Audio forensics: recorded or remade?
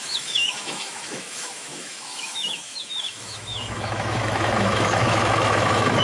remade